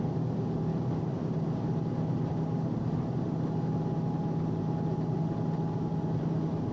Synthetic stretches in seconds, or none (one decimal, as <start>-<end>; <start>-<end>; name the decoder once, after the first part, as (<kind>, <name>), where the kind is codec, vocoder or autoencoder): none